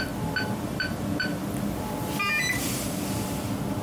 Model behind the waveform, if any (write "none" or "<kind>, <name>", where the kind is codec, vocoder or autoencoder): vocoder, BigVGAN v2